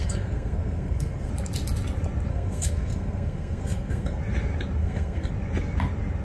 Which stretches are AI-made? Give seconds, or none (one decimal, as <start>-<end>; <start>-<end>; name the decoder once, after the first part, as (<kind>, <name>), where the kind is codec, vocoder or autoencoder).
0.0-1.3 (codec, SNAC); 2.3-4.2; 4.8-5.3